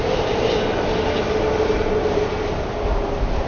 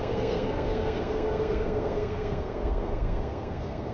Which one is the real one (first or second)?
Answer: first